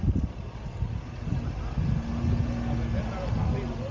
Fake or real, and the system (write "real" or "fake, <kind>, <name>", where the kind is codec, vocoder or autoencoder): real